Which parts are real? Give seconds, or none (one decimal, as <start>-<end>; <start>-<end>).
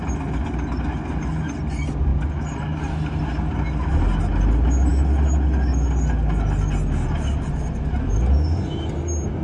0.0-9.4